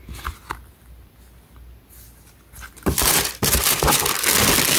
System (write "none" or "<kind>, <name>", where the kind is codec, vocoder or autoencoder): none